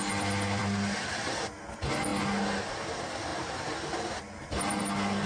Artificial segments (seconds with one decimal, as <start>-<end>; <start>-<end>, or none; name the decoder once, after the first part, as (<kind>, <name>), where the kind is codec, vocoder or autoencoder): 3.3-4.8 (vocoder, BigVGAN v2)